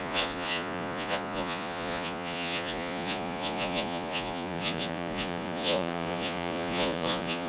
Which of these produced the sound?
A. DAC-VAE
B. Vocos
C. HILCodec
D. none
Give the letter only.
B